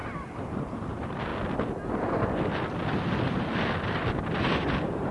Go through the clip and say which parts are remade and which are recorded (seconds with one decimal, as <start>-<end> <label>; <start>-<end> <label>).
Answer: 0.0-0.6 recorded; 0.6-1.3 remade; 1.3-4.4 recorded; 4.4-5.1 remade